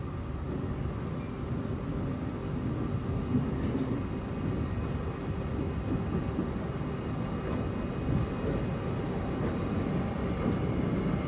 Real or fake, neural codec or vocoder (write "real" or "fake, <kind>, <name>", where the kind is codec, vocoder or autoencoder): real